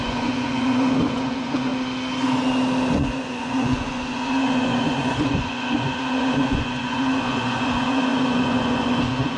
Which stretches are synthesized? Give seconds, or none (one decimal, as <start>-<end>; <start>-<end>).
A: 0.0-1.7; 2.9-9.4